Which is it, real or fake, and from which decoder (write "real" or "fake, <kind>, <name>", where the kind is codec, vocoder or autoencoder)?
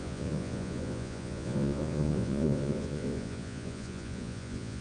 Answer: fake, vocoder, Vocos